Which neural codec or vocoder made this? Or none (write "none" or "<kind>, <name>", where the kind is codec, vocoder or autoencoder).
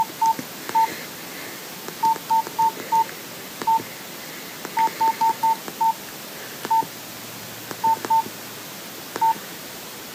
none